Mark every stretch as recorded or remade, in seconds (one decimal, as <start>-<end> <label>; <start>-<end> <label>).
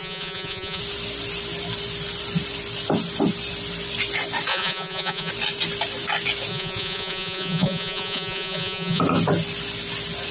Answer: 0.0-0.8 remade; 0.8-4.5 recorded; 4.5-5.3 remade; 5.3-6.5 recorded; 6.5-9.0 remade; 9.0-10.3 recorded